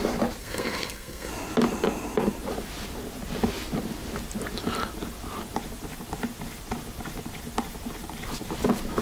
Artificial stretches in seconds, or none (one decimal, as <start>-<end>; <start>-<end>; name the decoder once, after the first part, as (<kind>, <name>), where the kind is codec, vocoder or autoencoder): 0.4-1.3 (codec, SNAC)